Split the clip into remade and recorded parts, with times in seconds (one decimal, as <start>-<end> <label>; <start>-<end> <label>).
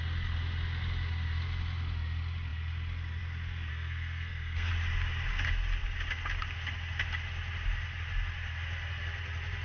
0.0-3.7 recorded; 3.7-4.7 remade; 4.7-9.6 recorded